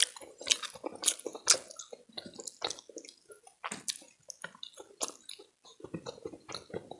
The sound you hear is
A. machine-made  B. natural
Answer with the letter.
B